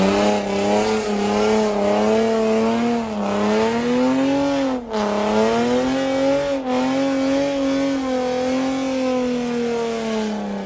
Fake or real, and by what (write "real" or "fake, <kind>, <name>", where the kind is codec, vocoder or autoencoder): real